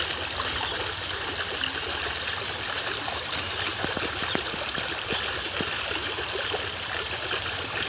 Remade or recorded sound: recorded